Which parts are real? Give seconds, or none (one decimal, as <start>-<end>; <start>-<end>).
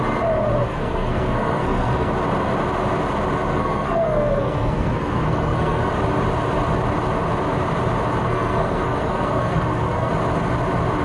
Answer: 0.0-0.7; 2.1-3.5; 5.9-8.2; 10.1-11.0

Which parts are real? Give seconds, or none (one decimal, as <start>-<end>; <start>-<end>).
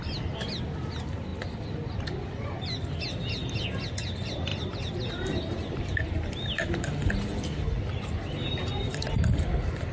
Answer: 0.0-9.9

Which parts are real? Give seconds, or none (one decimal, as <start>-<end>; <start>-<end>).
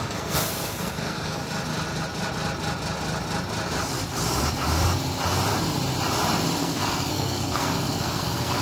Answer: 1.4-6.6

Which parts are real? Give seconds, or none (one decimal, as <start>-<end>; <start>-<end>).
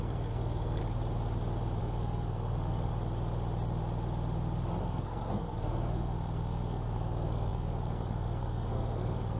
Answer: 0.8-1.8; 2.9-4.8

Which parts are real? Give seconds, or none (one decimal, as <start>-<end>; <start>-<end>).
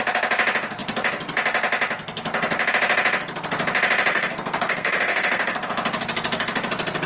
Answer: 0.0-4.1; 5.7-7.1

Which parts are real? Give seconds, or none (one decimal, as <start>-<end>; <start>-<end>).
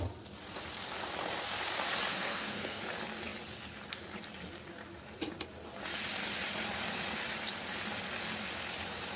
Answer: 0.0-2.1; 2.8-9.2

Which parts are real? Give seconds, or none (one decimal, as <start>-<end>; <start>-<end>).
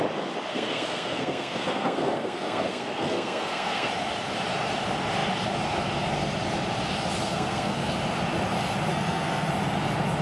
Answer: 0.0-0.5; 3.9-7.2; 7.9-8.9; 9.5-10.2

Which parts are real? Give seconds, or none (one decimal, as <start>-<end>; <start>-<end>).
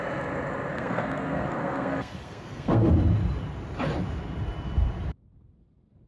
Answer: 0.0-0.7; 2.9-6.1